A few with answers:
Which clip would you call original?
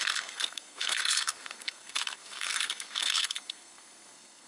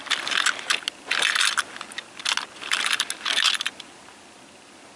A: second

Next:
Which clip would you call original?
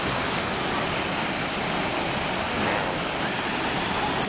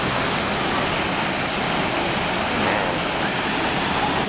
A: second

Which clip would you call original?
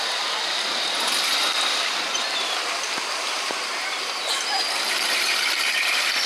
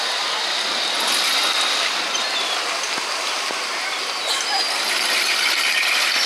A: second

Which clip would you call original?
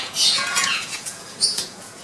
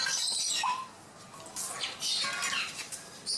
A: second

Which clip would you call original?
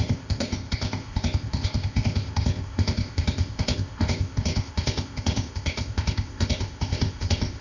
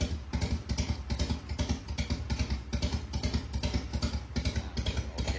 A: second